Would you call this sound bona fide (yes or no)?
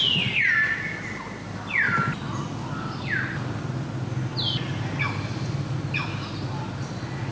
yes